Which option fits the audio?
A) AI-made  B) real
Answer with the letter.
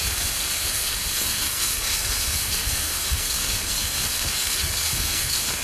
A